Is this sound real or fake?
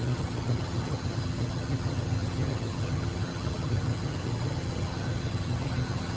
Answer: fake